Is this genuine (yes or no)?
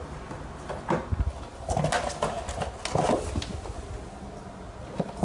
yes